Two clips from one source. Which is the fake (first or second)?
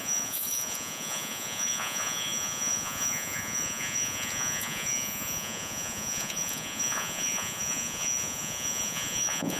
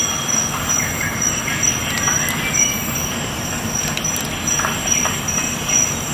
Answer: first